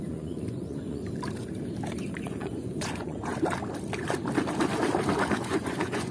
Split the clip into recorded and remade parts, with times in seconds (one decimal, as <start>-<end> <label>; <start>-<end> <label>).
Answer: 0.0-1.0 remade; 1.0-2.2 recorded; 2.2-3.3 remade; 3.3-5.4 recorded; 5.4-6.1 remade